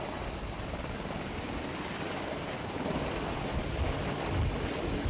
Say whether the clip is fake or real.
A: real